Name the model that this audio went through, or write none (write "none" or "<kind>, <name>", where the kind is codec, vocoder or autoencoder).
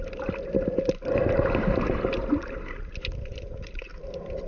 none